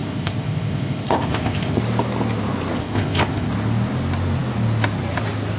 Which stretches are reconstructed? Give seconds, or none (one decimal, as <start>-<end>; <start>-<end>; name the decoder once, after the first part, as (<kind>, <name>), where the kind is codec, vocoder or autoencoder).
0.0-1.8 (codec, ZipCodec); 2.8-3.5